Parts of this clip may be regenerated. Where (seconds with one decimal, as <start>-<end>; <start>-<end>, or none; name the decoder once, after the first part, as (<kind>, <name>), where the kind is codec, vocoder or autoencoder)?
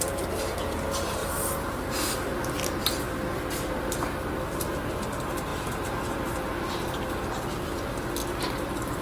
none